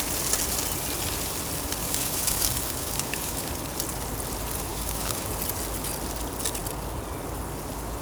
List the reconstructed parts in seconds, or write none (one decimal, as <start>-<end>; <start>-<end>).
1.8-3.5; 4.7-5.3